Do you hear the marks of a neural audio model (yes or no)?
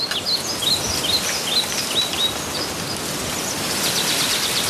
no